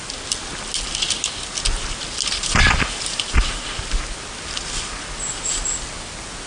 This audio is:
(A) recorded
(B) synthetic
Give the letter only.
A